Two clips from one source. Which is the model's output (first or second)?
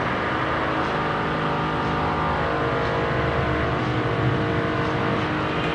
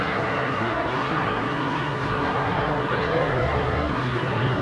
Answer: second